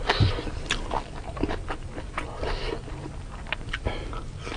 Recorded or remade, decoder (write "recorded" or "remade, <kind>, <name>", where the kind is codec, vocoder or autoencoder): remade, vocoder, BigVGAN v2